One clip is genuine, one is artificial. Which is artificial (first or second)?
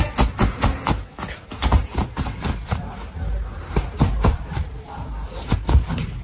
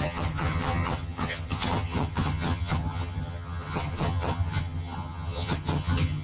second